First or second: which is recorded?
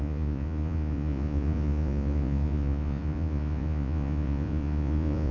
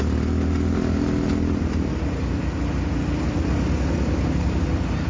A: second